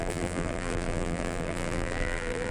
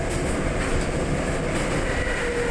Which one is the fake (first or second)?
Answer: first